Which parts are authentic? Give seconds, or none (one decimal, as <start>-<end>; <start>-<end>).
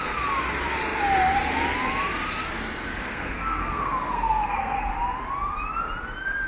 0.0-2.9; 4.8-6.5